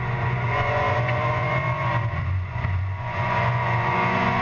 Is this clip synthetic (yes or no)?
yes